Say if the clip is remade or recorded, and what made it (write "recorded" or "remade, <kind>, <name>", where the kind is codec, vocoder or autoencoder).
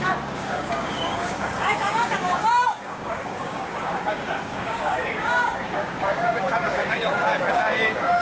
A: remade, codec, DAC